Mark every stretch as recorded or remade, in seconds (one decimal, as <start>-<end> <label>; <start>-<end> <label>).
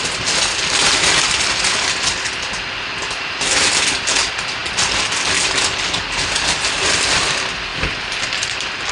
0.0-8.9 recorded